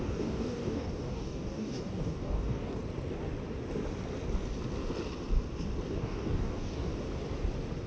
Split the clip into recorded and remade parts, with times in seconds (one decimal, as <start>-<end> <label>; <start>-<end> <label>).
0.0-2.8 remade; 2.8-5.9 recorded; 5.9-6.9 remade; 6.9-7.9 recorded